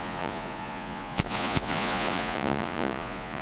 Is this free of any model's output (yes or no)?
no